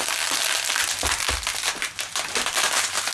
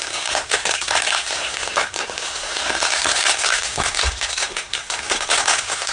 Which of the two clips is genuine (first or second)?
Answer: first